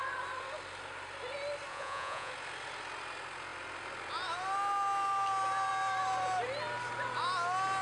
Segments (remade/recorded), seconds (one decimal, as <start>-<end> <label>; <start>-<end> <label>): 0.0-1.7 recorded; 1.7-2.3 remade; 2.3-7.8 recorded